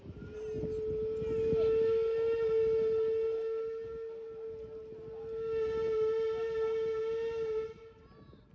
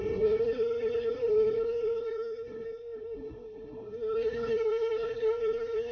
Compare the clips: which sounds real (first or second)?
first